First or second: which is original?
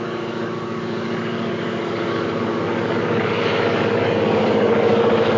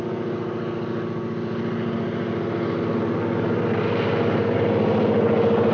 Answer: second